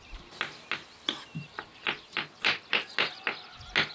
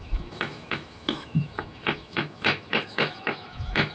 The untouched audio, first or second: first